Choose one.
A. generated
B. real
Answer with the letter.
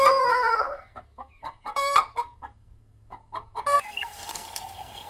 A